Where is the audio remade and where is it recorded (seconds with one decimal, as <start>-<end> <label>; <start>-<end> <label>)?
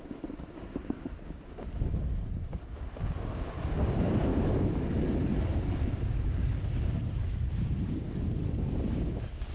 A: 0.0-4.3 remade; 4.3-5.9 recorded; 5.9-8.4 remade; 8.4-8.9 recorded; 8.9-9.5 remade